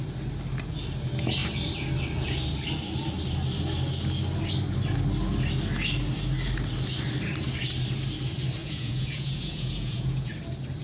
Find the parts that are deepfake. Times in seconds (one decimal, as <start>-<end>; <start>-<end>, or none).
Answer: 8.6-10.3